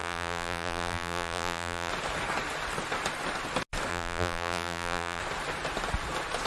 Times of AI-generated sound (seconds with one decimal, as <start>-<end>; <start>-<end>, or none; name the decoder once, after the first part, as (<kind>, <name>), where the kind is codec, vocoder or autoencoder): 0.0-1.9 (vocoder, BigVGAN v2); 3.9-5.2